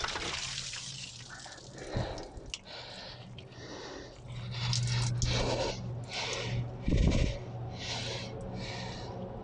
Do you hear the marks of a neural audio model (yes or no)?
no